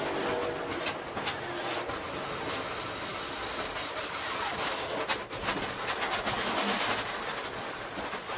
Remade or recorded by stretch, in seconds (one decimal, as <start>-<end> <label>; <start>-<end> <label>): 0.0-8.4 recorded